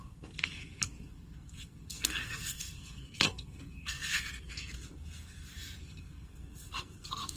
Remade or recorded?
remade